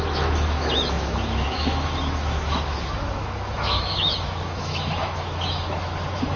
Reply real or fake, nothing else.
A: fake